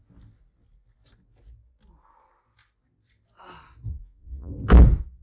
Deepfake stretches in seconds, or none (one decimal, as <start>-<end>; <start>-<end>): 3.9-4.5